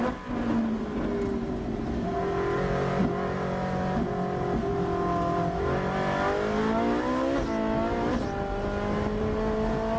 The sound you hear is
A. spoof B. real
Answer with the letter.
B